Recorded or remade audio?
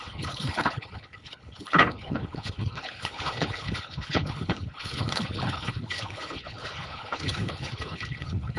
remade